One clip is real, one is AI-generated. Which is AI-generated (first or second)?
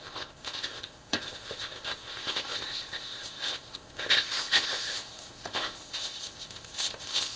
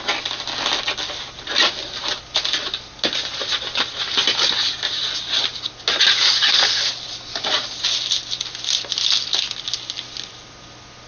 first